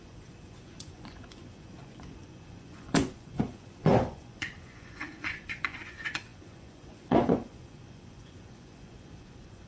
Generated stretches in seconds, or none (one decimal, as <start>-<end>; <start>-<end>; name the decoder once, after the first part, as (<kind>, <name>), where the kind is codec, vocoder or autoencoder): 0.0-9.7 (vocoder, Vocos)